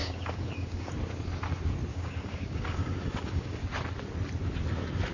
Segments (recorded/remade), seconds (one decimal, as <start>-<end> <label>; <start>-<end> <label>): 0.0-0.9 remade; 0.9-1.9 recorded; 1.9-3.6 remade; 3.6-5.1 recorded